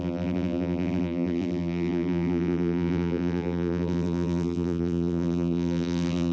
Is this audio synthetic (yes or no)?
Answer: yes